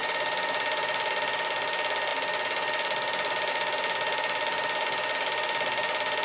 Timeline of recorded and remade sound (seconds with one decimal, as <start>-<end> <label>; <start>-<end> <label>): 0.0-6.2 recorded